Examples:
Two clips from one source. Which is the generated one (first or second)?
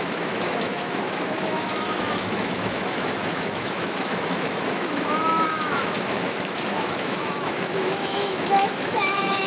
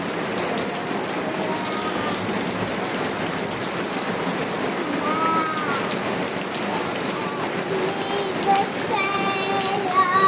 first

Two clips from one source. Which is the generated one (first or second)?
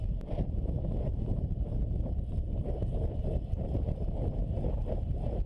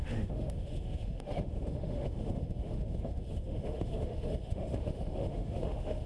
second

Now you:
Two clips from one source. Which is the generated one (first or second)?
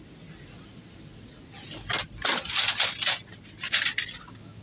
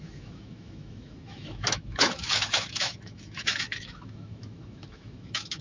second